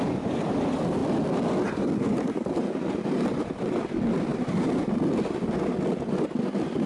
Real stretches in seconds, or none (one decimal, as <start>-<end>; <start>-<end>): 1.0-3.8; 4.3-6.3